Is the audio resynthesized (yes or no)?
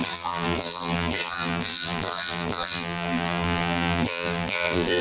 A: yes